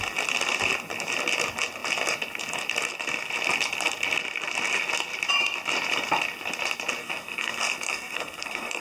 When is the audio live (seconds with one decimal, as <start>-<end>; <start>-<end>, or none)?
0.0-7.0